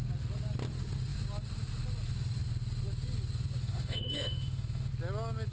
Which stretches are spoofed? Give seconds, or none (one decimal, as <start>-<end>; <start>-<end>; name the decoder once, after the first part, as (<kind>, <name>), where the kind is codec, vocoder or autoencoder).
3.6-4.9 (autoencoder, DAC-VAE)